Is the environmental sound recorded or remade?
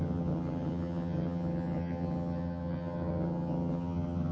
remade